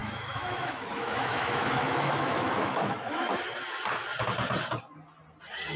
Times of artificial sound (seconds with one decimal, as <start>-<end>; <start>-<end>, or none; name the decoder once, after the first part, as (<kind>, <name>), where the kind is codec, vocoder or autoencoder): 0.0-3.4 (autoencoder, DAC-VAE)